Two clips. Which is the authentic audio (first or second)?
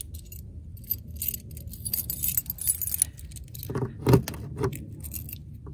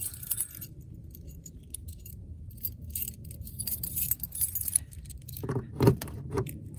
first